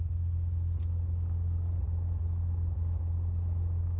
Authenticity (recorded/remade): recorded